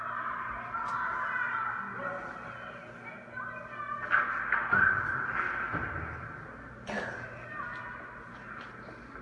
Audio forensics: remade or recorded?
recorded